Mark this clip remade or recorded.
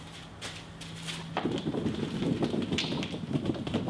recorded